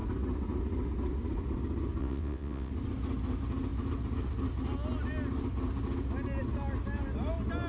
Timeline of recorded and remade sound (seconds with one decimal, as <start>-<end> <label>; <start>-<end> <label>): 0.0-2.0 recorded; 2.0-2.7 remade; 2.7-7.7 recorded